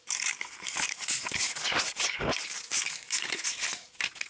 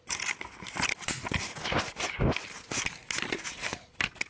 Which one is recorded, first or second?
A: second